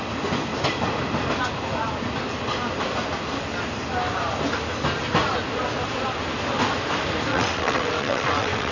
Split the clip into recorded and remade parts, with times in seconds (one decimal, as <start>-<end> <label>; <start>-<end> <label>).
0.0-7.3 recorded; 7.3-8.7 remade